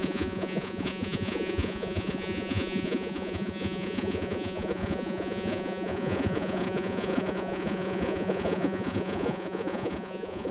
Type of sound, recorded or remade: remade